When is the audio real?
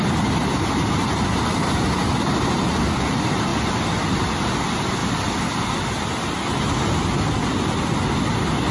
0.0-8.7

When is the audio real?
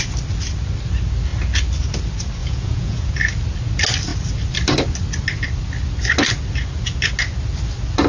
0.0-2.4; 3.1-8.1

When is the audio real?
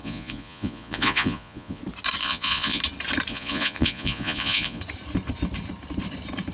1.8-2.2; 2.8-3.3; 4.8-6.5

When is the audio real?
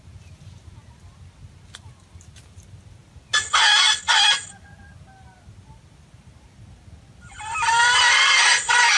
0.0-9.0